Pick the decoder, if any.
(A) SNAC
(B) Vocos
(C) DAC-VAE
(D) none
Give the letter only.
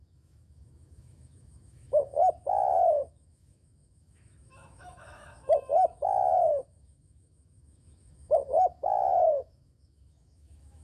C